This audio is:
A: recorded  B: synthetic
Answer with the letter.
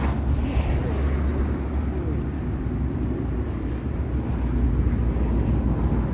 A